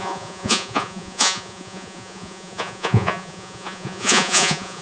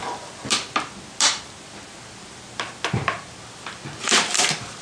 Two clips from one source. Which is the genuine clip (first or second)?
second